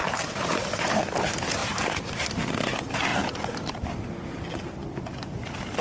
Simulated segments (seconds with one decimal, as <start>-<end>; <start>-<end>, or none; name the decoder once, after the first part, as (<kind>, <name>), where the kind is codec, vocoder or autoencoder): 0.0-1.0 (vocoder, BigVGAN v2); 1.6-2.4; 3.1-3.9